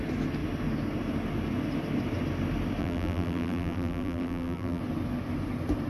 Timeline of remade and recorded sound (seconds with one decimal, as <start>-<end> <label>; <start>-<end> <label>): 0.0-2.8 recorded; 2.8-4.8 remade; 4.8-5.9 recorded